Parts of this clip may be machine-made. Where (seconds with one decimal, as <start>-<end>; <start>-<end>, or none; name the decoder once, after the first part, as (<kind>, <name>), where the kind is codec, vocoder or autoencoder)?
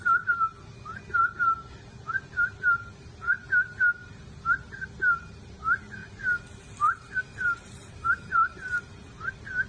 7.3-8.9 (vocoder, BigVGAN v2)